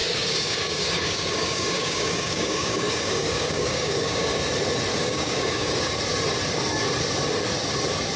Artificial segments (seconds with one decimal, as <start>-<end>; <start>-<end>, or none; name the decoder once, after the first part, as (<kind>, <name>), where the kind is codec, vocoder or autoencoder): 0.0-4.4 (codec, DAC); 4.9-5.9